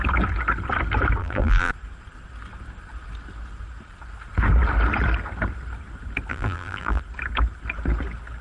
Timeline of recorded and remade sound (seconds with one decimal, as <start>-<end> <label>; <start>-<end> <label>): 0.0-1.2 recorded; 1.2-1.7 remade; 1.7-6.3 recorded; 6.3-7.0 remade; 7.0-8.4 recorded